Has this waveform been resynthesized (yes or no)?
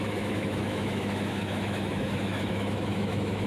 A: yes